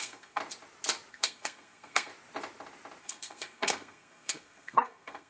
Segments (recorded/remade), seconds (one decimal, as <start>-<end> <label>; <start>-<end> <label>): 0.0-0.4 remade; 0.4-1.1 recorded; 1.1-2.1 remade; 2.1-3.0 recorded; 3.0-5.3 remade